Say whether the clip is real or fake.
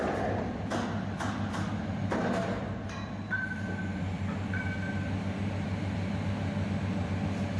real